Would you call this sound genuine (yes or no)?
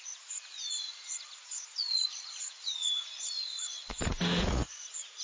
no